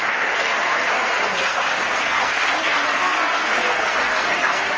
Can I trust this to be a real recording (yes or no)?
no